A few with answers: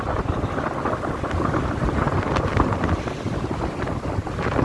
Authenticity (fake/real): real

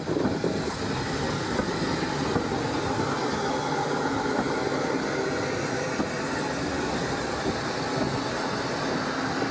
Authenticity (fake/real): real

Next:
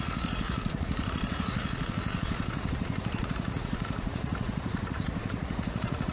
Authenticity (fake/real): fake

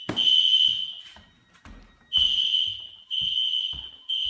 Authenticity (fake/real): real